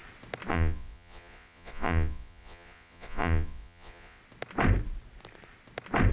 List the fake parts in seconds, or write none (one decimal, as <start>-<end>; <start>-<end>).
0.5-4.2